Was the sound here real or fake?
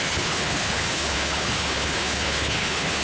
fake